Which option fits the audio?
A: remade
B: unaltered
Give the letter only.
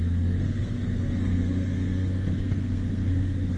A